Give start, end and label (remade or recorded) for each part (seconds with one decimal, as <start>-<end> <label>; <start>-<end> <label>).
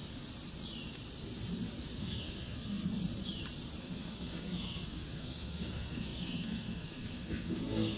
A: 0.0-2.0 recorded; 2.0-2.9 remade; 2.9-3.8 recorded; 3.8-8.0 remade